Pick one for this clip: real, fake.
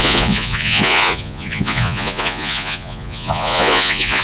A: fake